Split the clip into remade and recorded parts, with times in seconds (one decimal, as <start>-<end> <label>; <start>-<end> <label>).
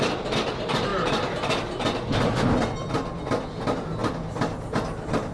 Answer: 0.0-5.3 recorded